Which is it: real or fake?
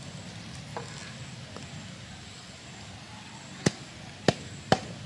real